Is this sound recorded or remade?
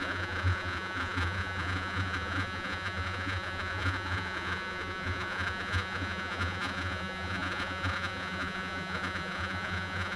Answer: remade